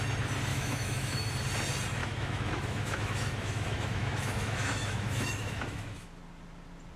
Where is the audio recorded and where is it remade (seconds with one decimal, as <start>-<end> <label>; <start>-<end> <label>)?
0.0-0.5 recorded; 0.5-1.3 remade; 1.3-2.0 recorded; 2.0-6.2 remade; 6.2-7.0 recorded